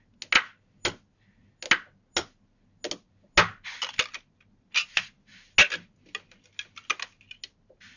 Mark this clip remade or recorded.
recorded